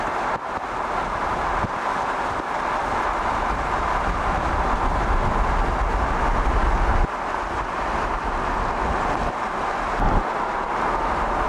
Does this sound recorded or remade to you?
recorded